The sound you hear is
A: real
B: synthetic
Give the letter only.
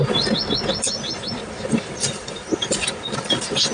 A